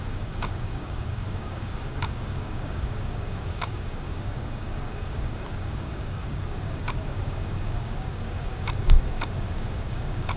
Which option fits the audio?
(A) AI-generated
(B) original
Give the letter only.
A